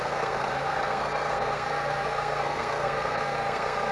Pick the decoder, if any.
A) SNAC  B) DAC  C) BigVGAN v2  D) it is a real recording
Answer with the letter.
A